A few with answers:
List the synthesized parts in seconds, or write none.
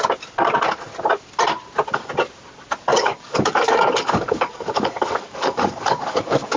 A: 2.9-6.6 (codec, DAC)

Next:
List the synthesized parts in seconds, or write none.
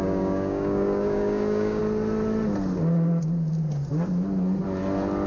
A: 0.0-1.8 (codec, DAC)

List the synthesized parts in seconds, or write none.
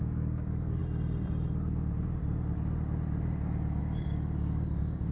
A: 0.0-0.8 (codec, DAC); 3.8-5.1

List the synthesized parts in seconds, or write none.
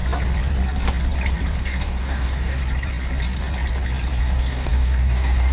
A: 1.6-2.6 (codec, DAC); 4.2-5.5